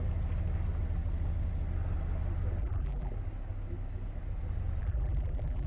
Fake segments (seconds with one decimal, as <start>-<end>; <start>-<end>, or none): 2.6-3.1; 4.8-5.7